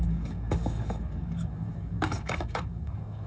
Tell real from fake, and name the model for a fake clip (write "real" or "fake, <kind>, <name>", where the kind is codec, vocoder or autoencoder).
fake, codec, DAC